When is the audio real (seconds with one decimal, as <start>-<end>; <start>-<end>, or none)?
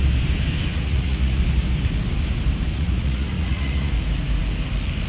0.0-0.7; 1.4-2.7; 3.9-5.1